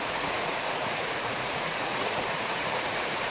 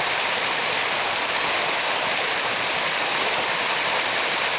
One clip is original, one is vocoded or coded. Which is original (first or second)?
second